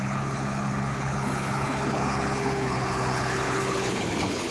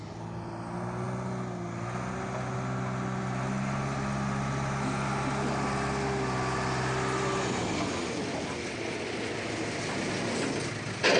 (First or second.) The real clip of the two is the second